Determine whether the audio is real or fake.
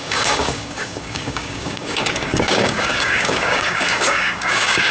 fake